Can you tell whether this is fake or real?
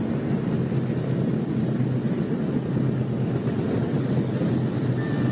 real